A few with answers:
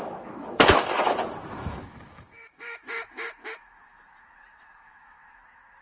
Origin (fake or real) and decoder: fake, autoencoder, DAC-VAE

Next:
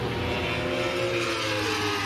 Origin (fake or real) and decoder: real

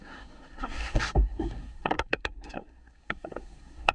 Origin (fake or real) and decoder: fake, codec, SNAC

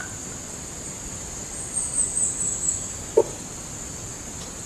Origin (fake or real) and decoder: real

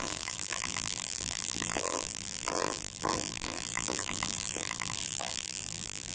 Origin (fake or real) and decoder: fake, vocoder, BigVGAN v2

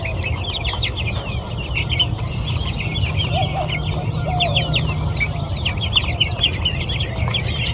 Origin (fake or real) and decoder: real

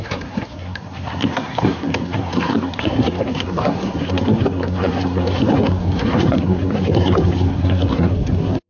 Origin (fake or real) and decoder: fake, codec, SNAC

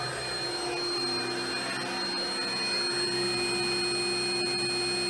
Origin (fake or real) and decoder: real